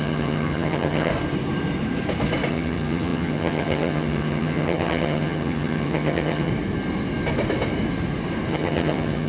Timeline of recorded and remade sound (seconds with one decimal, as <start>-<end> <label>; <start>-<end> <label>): 0.0-1.1 remade; 1.1-2.5 recorded; 2.5-6.5 remade; 6.5-8.5 recorded; 8.5-9.3 remade